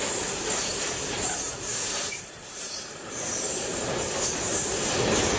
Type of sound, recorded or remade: remade